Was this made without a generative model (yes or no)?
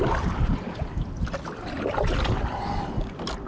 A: yes